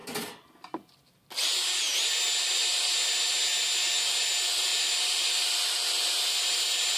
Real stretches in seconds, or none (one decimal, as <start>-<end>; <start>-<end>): 0.0-7.0